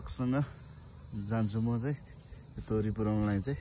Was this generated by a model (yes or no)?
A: no